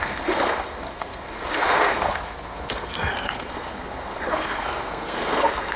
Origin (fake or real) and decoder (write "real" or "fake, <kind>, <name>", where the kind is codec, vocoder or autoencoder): fake, codec, SNAC